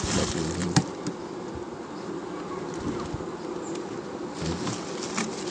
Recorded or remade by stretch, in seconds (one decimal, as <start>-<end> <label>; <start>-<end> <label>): 0.0-0.6 recorded; 0.6-1.2 remade; 1.2-5.5 recorded